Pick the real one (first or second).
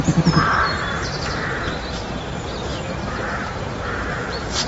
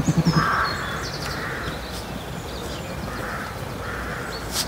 second